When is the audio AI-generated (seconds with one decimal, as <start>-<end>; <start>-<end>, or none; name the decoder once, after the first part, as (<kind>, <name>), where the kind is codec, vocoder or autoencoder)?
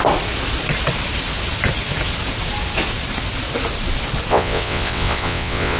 4.3-5.8 (vocoder, WaveNeXt)